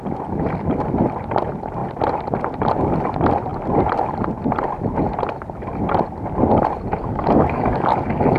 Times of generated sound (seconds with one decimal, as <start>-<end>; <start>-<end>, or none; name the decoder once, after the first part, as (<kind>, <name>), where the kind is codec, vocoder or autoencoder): 7.0-8.4 (codec, DAC)